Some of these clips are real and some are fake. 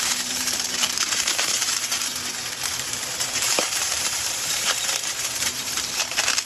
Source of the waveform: fake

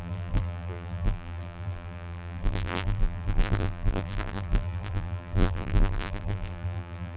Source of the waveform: fake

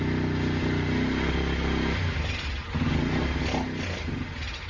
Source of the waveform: real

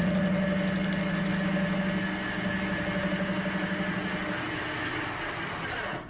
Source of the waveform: real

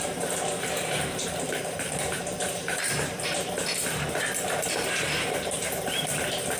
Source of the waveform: fake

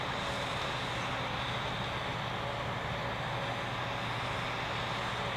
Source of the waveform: real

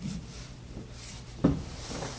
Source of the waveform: fake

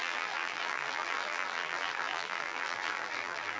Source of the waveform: fake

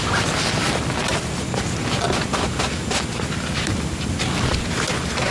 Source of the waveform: real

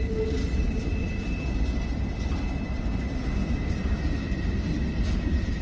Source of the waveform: real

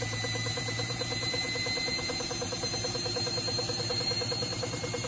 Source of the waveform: fake